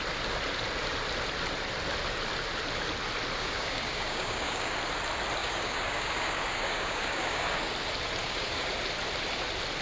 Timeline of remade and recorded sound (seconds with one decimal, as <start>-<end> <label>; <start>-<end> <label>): 0.0-3.4 recorded; 3.4-4.8 remade; 4.8-5.4 recorded; 5.4-7.7 remade; 7.7-8.2 recorded; 8.2-8.7 remade; 8.7-9.8 recorded